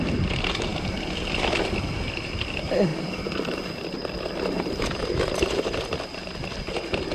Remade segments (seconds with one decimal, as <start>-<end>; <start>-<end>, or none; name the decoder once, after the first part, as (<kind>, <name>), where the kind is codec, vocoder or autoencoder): none